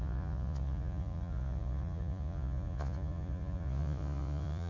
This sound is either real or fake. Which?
fake